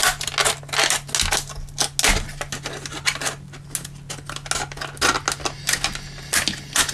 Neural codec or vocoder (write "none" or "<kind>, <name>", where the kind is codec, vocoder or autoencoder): none